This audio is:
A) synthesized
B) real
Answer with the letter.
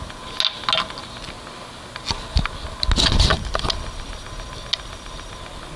B